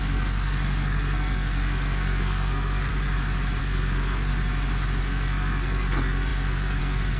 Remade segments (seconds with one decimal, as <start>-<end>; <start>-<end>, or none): 0.0-2.9; 3.6-4.3; 5.0-7.2